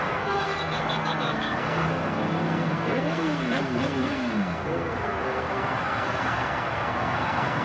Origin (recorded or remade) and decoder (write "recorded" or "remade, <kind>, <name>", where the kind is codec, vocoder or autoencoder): remade, codec, SNAC